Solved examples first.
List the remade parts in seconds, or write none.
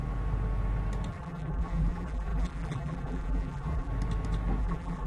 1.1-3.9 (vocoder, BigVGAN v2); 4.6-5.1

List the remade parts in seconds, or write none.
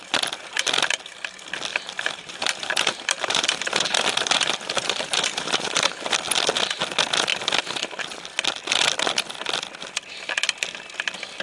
1.7-5.9 (vocoder, BigVGAN v2)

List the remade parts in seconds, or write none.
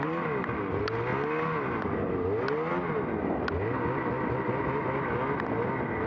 none